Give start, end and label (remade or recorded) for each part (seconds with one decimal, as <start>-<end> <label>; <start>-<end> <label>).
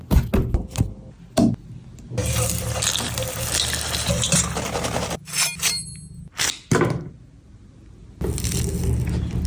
0.0-9.5 recorded